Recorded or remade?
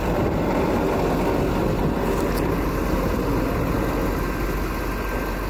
recorded